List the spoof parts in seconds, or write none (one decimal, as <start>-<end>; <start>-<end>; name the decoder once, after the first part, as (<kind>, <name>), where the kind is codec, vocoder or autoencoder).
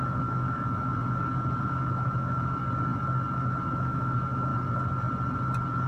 0.0-0.9 (autoencoder, DAC-VAE); 1.6-2.6; 3.6-4.5